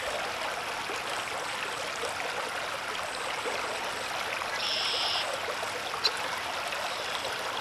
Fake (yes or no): no